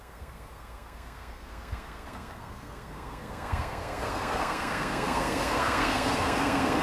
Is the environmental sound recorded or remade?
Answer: remade